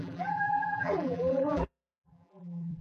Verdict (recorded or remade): remade